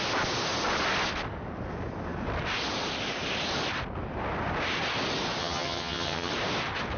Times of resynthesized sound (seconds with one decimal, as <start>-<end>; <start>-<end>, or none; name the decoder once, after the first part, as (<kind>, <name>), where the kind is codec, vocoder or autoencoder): 5.4-6.3 (vocoder, HiFi-GAN)